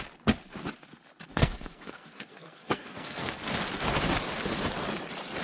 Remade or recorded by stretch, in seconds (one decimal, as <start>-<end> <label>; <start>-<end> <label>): 0.0-1.3 recorded; 1.3-3.3 remade; 3.3-5.4 recorded